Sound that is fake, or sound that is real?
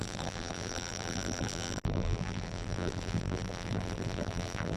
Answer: fake